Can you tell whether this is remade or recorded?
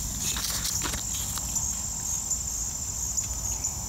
recorded